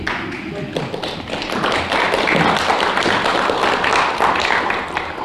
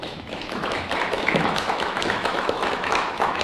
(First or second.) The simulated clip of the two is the second